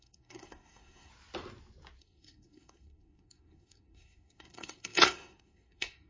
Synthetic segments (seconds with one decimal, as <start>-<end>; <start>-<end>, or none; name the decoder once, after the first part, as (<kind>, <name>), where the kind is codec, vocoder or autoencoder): 0.0-1.1 (codec, SNAC); 2.0-6.1